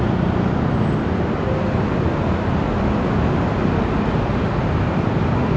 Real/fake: real